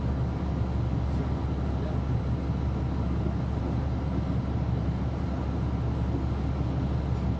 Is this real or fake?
real